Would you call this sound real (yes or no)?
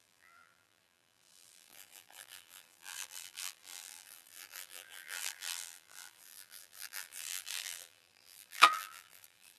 no